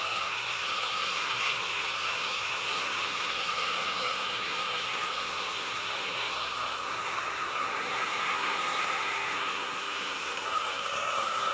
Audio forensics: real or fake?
fake